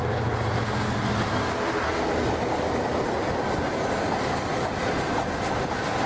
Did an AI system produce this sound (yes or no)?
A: no